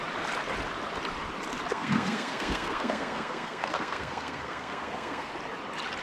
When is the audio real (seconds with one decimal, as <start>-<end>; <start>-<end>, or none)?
0.0-1.7; 5.3-6.0